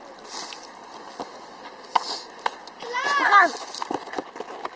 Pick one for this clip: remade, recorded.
recorded